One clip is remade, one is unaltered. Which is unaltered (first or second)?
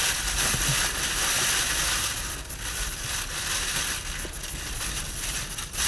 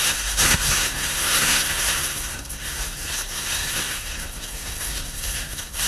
first